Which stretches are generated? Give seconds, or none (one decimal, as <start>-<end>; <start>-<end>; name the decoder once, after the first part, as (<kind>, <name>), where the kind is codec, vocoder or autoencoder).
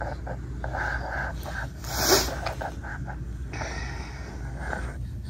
1.3-1.9 (codec, DAC); 2.9-5.3